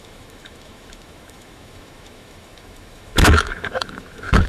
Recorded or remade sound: remade